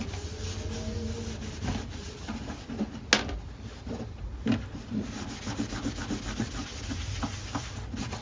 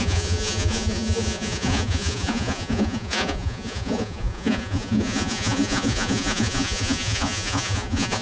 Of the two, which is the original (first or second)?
first